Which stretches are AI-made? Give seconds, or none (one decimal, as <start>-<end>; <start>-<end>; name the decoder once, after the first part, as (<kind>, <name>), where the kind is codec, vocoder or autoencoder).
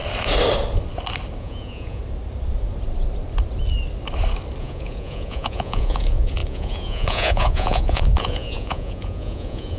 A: 1.4-2.0 (vocoder, Vocos); 4.6-9.8